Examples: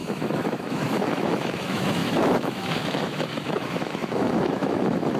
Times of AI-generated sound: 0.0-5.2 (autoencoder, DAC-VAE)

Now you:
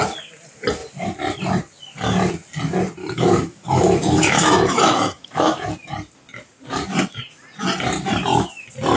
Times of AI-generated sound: 3.0-5.7 (autoencoder, DAC-VAE)

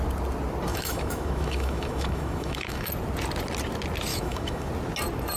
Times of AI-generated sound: 0.7-2.9 (autoencoder, DAC-VAE); 4.1-4.7

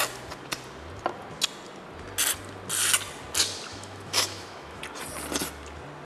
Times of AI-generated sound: 3.7-4.8 (autoencoder, DAC-VAE)

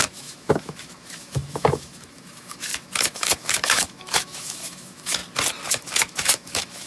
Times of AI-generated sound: 0.0-5.2 (autoencoder, DAC-VAE); 5.7-6.9

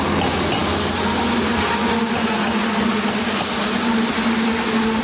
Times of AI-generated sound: none

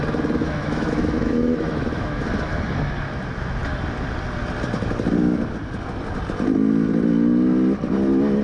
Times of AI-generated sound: 0.4-2.3 (autoencoder, DAC-VAE)

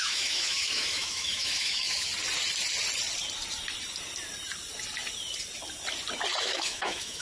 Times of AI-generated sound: 0.0-2.1 (autoencoder, DAC-VAE); 6.4-7.2